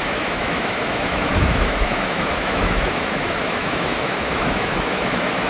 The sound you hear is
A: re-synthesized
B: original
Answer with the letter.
A